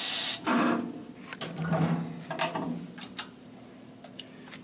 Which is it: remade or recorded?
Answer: recorded